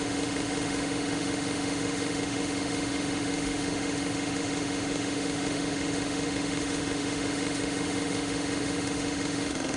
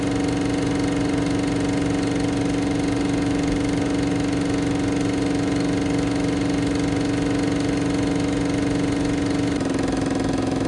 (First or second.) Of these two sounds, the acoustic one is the second